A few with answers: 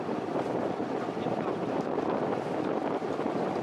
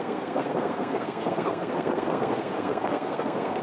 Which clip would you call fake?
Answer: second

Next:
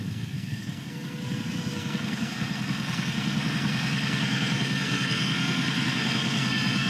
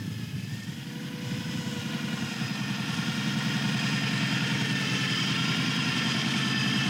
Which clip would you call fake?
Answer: first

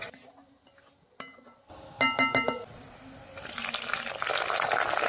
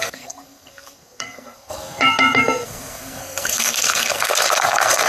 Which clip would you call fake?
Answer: second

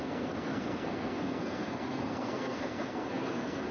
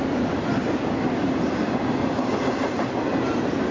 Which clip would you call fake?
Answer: first